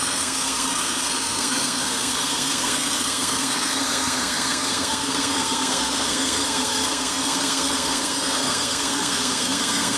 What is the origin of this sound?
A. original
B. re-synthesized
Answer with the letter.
B